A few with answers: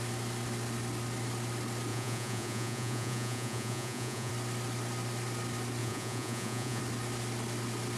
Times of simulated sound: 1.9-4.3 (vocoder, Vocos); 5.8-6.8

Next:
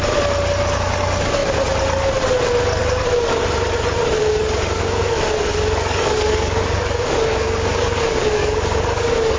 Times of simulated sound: 4.2-9.4 (codec, DAC)

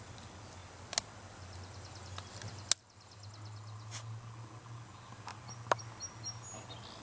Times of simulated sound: none

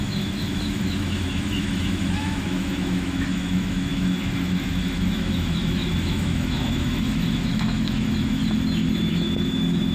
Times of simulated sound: 0.0-8.4 (autoencoder, DAC-VAE); 9.1-9.9

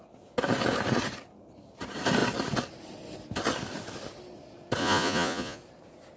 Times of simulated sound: 4.8-5.6 (vocoder, Vocos)

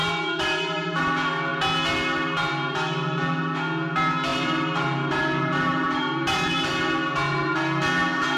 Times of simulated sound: 0.0-1.0 (vocoder, BigVGAN v2); 4.3-6.7

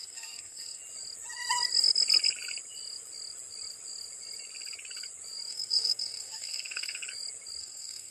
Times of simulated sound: 0.0-0.8 (codec, SNAC); 5.5-7.0; 7.6-8.1